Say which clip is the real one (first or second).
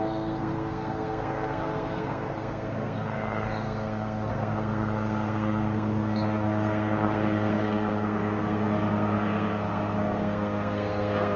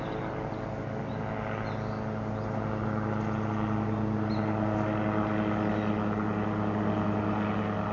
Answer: second